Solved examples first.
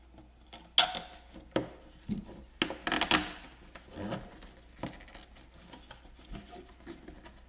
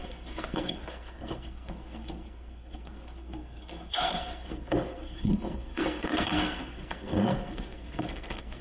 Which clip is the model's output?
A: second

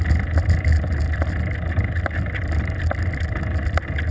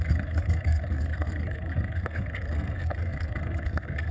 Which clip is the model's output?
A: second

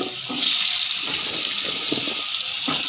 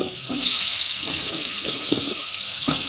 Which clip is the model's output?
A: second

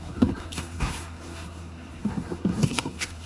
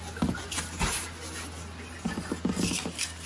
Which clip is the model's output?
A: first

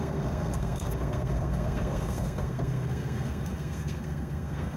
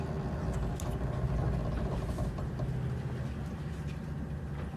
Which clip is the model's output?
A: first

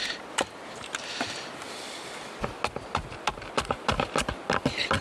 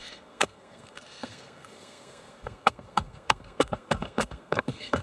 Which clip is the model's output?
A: second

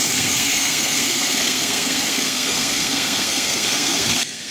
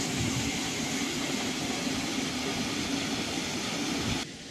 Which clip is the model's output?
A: first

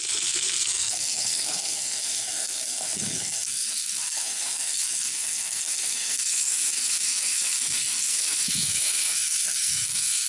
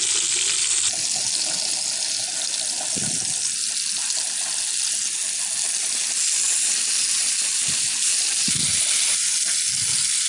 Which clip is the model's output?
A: first